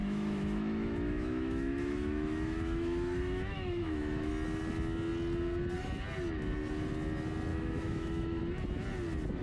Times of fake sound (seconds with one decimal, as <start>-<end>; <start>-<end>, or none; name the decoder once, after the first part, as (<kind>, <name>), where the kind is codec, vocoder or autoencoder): 0.0-4.3 (autoencoder, DAC-VAE); 7.5-8.4